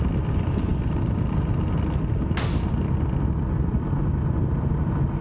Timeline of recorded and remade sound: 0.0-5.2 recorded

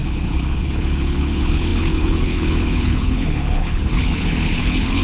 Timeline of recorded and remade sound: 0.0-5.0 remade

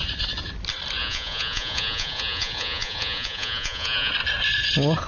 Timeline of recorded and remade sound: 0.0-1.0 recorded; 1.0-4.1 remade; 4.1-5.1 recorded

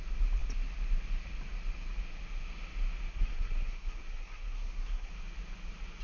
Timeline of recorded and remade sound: 0.0-3.1 recorded; 3.1-5.1 remade; 5.1-6.0 recorded

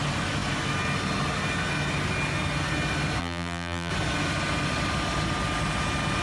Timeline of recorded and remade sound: 0.0-3.2 recorded; 3.2-3.9 remade; 3.9-6.2 recorded

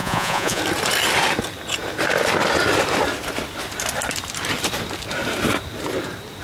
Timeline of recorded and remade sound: 0.0-0.6 remade; 0.6-6.4 recorded

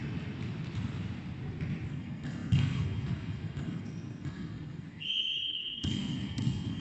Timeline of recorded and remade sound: 0.0-1.9 recorded; 1.9-6.8 remade

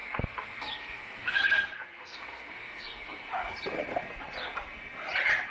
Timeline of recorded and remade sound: 0.0-3.3 remade; 3.3-5.5 recorded